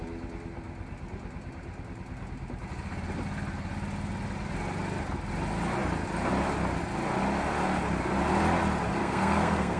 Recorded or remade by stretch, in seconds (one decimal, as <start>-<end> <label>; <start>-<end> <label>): 0.0-9.0 recorded; 9.0-9.8 remade